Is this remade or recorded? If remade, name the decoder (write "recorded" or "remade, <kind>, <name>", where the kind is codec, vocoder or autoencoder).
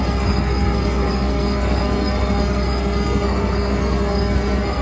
remade, codec, SNAC